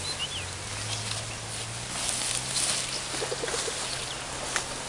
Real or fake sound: real